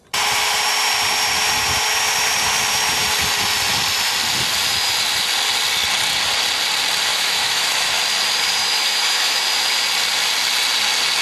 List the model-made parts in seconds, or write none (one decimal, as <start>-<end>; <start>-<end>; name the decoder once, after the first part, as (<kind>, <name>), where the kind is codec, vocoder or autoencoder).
7.1-7.9 (autoencoder, DAC-VAE); 8.6-9.4